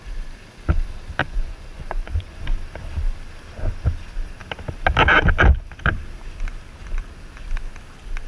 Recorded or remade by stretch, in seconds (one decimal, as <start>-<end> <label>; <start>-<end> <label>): 0.0-1.2 recorded; 1.2-2.4 remade; 2.4-8.3 recorded